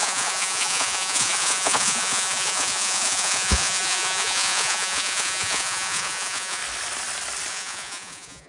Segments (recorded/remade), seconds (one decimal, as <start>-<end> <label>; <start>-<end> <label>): 0.0-6.6 remade; 6.6-7.5 recorded; 7.5-8.5 remade